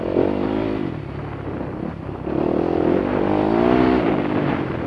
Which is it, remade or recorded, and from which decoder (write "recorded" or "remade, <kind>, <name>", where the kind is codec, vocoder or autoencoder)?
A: recorded